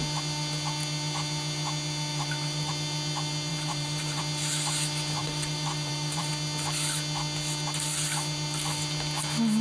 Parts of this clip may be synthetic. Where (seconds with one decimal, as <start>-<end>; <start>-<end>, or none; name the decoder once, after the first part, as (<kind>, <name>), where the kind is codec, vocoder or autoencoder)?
2.1-2.7 (vocoder, BigVGAN v2); 3.5-4.2; 5.2-6.3